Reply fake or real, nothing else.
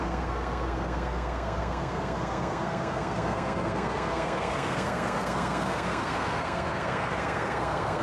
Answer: fake